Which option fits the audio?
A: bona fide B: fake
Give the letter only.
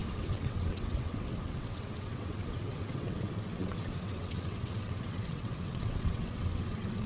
B